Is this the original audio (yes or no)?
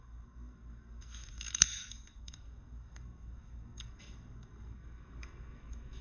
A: no